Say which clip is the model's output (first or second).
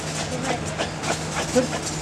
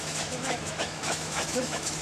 second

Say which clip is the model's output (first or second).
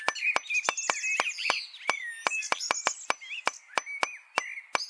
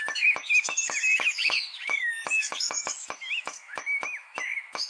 second